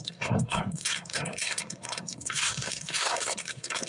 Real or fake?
fake